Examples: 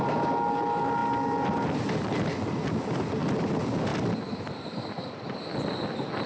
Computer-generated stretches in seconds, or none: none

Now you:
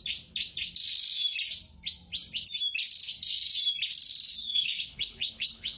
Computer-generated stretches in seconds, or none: 4.4-5.8 (codec, HILCodec)

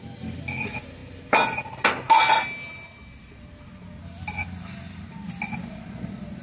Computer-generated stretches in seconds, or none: none